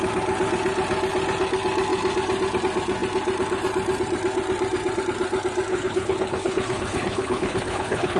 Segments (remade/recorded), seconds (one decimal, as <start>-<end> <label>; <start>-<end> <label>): 0.0-5.7 recorded; 5.7-8.2 remade